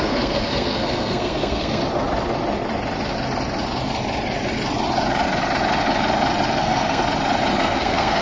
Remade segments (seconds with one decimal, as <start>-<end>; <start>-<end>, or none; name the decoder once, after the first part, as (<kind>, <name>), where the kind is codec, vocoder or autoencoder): 0.0-1.8 (codec, SNAC); 6.6-7.0; 7.6-8.2